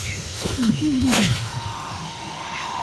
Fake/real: fake